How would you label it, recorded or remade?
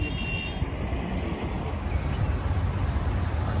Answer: recorded